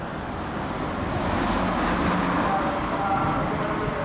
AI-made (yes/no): no